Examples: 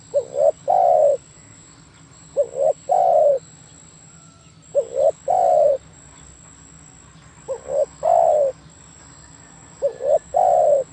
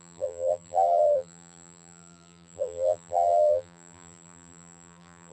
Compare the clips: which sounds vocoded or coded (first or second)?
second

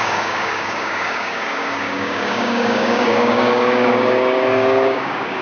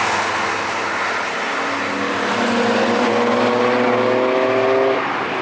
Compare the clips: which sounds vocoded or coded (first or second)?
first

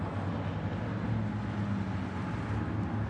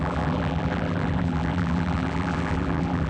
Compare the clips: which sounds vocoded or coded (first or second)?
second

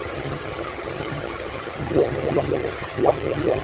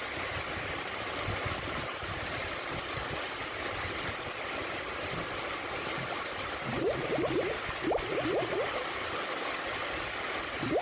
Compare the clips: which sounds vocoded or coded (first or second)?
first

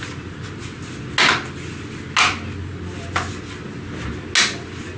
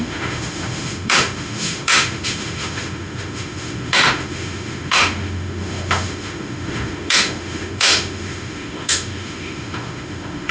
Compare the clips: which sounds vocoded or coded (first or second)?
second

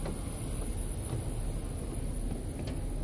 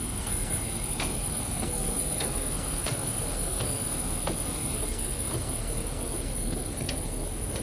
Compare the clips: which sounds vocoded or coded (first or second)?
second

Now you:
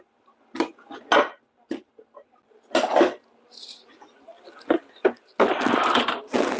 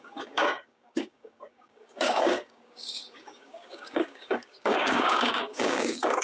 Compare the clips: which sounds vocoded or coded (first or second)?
second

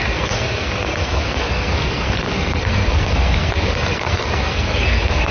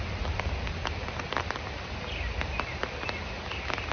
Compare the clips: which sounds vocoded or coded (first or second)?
first